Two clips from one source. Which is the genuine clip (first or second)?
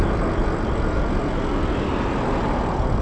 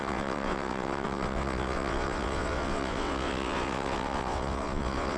first